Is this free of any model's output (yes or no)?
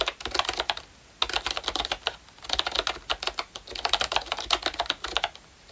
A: yes